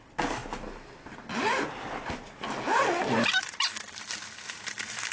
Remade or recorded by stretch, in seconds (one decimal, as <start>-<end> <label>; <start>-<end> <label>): 0.0-5.1 recorded